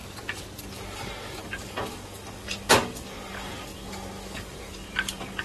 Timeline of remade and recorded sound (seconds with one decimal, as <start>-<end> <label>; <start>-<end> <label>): 0.0-0.7 recorded; 0.7-5.4 remade